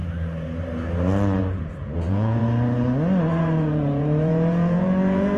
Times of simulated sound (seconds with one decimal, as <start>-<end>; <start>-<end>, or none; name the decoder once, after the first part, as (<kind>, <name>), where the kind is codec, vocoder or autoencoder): 1.4-2.4 (vocoder, Vocos); 3.4-5.4